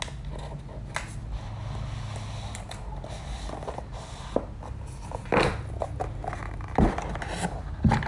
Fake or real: real